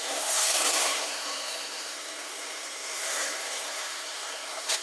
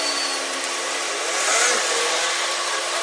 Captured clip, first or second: second